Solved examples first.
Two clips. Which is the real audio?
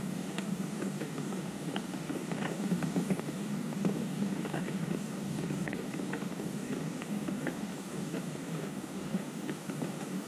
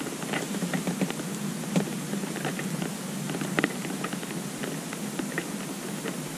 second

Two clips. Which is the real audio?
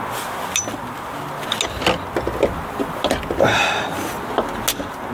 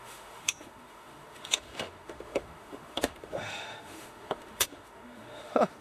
first